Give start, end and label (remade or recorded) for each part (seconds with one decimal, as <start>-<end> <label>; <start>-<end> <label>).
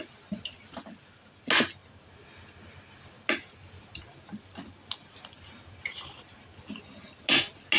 0.0-7.8 recorded